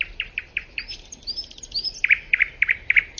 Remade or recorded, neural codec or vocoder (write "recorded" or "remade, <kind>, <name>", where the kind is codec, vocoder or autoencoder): recorded